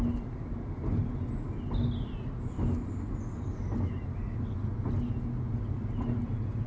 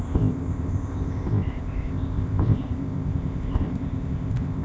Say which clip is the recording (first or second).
first